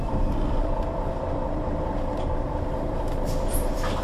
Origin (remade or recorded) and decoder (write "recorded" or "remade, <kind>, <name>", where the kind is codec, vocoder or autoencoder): remade, vocoder, BigVGAN v2